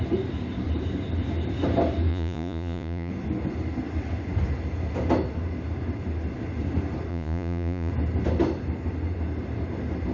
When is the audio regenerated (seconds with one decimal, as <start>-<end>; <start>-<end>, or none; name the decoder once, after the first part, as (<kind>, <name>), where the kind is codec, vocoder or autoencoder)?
2.1-3.1 (vocoder, Vocos); 7.1-7.9